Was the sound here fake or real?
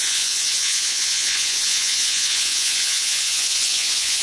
fake